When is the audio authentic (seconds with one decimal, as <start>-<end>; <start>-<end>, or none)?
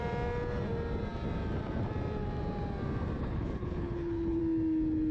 0.0-3.2; 4.4-5.1